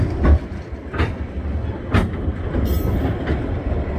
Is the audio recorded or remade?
recorded